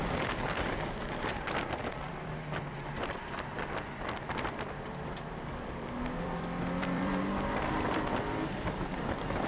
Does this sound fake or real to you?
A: fake